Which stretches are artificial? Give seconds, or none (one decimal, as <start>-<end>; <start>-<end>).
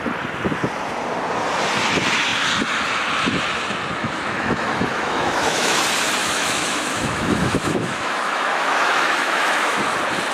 4.0-5.8; 6.2-9.8